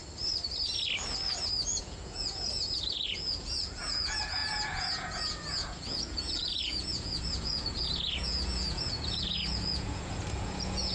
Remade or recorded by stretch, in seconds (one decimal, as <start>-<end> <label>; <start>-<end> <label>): 0.0-1.8 recorded; 1.8-10.9 remade